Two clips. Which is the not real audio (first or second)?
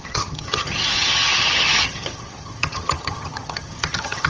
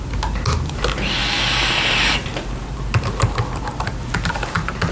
first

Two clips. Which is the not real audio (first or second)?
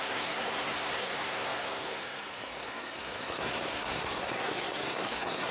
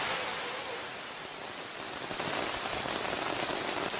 first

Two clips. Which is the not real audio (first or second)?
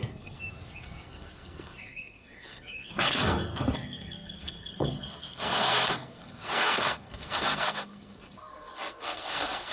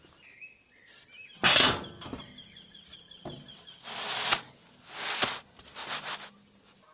first